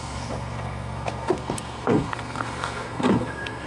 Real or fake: fake